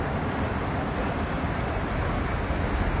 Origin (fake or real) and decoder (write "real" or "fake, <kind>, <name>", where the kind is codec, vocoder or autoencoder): real